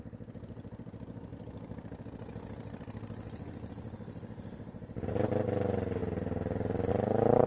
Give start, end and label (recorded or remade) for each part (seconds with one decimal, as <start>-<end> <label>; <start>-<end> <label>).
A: 0.0-7.5 recorded

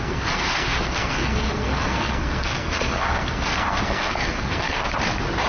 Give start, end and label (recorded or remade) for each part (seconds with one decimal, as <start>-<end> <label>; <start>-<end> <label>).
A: 0.0-4.8 remade; 4.8-5.5 recorded